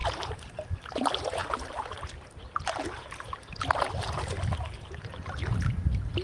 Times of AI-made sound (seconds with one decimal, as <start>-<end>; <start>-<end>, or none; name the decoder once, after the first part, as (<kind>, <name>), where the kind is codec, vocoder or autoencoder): 0.0-0.5 (vocoder, BigVGAN v2)